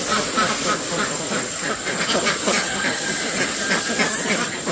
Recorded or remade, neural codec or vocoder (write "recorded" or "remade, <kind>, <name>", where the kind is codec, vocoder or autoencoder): recorded